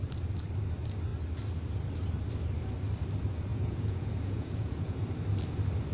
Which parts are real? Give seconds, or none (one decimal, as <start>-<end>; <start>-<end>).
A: 0.0-3.5; 5.0-5.9